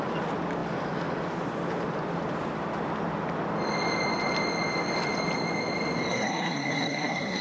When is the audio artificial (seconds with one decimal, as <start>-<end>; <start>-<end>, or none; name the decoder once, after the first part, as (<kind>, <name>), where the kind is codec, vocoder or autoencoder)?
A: 6.1-7.4 (codec, SNAC)